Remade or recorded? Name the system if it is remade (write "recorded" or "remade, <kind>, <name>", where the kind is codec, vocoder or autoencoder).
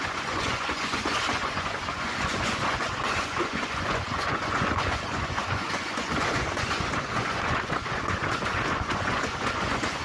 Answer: remade, vocoder, Vocos